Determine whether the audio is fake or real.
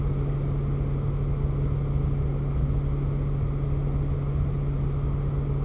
real